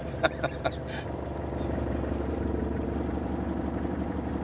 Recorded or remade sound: remade